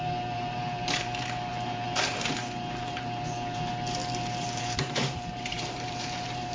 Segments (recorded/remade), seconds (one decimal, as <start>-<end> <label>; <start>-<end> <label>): 0.0-3.7 remade; 3.7-4.4 recorded; 4.4-6.5 remade